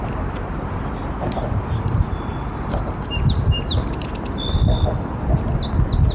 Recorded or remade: recorded